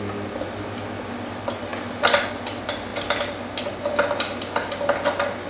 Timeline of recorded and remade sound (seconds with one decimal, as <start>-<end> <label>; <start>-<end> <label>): 0.0-5.5 recorded